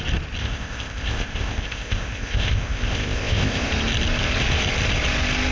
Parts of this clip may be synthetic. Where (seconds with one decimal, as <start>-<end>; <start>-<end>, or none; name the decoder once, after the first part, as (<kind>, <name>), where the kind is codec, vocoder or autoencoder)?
0.4-3.7 (codec, ZipCodec)